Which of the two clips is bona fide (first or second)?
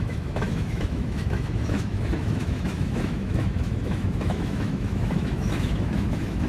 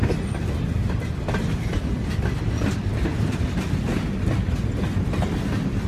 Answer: second